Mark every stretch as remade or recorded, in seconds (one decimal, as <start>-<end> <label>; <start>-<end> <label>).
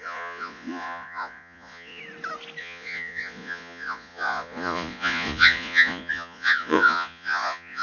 0.0-2.0 remade; 2.0-2.6 recorded; 2.6-7.8 remade